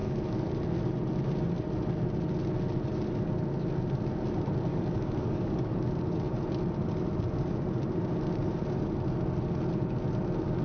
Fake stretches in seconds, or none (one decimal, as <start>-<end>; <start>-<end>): 0.0-0.5; 4.7-5.7